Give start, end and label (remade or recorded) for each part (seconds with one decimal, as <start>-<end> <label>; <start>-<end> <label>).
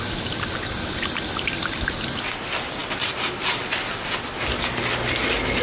0.0-5.6 recorded